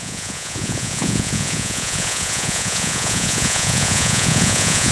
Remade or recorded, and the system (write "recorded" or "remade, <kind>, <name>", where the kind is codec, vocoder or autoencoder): remade, vocoder, Vocos